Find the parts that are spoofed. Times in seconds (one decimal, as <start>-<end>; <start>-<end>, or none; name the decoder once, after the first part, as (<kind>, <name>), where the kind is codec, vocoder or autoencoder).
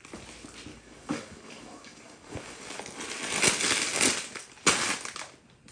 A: 0.7-2.8 (codec, DAC)